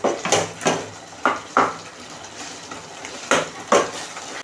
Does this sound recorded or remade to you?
recorded